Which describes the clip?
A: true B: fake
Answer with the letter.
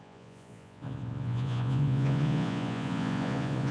B